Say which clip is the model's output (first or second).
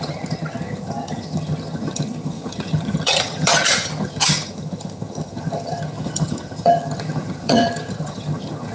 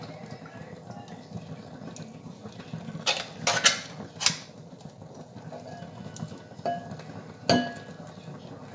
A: first